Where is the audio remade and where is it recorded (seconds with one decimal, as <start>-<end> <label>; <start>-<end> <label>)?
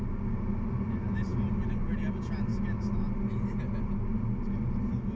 0.0-5.2 recorded